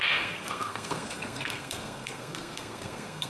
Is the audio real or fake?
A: fake